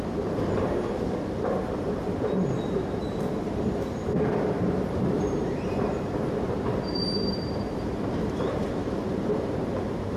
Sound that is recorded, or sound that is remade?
remade